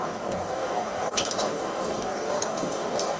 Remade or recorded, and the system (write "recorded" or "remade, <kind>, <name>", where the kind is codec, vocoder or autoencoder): remade, codec, DAC